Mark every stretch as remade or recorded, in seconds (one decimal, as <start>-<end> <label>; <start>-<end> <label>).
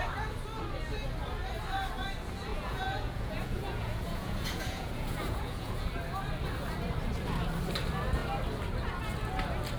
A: 0.0-2.5 recorded; 2.5-5.9 remade; 5.9-9.8 recorded